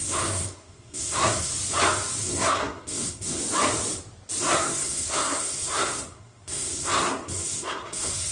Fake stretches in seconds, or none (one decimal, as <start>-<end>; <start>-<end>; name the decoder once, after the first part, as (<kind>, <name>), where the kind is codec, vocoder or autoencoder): 0.0-1.5 (codec, SNAC); 2.2-3.4; 4.4-8.3